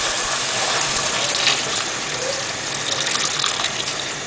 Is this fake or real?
fake